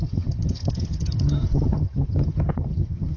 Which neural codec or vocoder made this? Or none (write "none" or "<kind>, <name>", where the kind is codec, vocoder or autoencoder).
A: vocoder, HiFi-GAN